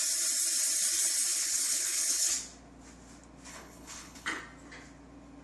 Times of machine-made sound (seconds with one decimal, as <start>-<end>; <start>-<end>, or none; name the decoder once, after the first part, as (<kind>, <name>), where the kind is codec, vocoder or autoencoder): 1.3-2.3 (codec, HILCodec); 3.5-4.4